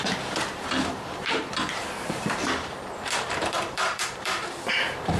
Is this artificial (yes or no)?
yes